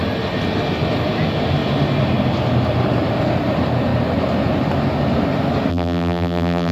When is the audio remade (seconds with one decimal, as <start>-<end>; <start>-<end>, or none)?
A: 5.7-6.7